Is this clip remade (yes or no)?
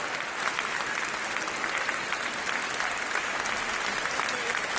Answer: no